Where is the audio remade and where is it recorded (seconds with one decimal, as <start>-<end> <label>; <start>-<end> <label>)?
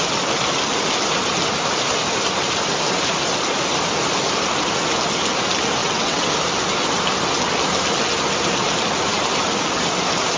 0.0-5.8 recorded; 5.8-6.3 remade; 6.3-10.4 recorded